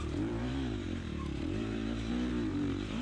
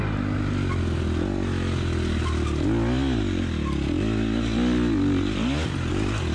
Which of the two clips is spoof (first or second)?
first